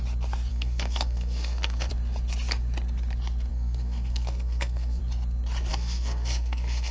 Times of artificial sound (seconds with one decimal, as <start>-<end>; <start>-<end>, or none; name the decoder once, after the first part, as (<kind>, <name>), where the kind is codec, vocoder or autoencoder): 0.5-1.9 (codec, SNAC); 3.5-5.0; 5.7-6.9